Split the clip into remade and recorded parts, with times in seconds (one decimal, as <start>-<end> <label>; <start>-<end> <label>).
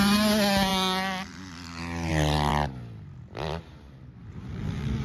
0.0-5.0 recorded